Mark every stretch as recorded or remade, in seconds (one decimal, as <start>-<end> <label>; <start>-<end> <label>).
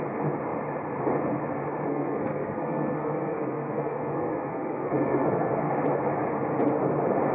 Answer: 0.0-1.9 recorded; 1.9-5.7 remade; 5.7-7.3 recorded